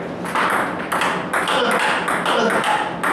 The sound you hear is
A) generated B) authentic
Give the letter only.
B